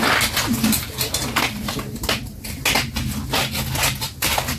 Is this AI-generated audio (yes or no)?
no